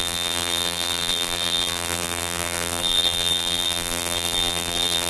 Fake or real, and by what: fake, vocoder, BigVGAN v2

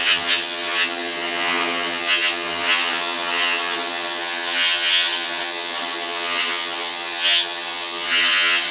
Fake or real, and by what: fake, vocoder, HiFi-GAN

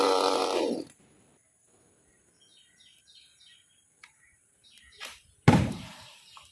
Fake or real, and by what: fake, vocoder, BigVGAN v2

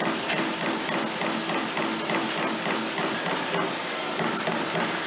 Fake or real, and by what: real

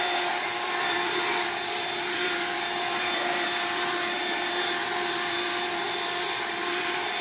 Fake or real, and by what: fake, vocoder, BigVGAN v2